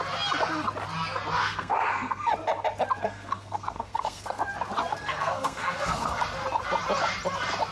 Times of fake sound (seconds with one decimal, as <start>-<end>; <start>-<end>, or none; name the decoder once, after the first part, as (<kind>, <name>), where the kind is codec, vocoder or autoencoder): 1.4-2.3 (codec, SNAC); 3.0-4.4; 4.9-6.2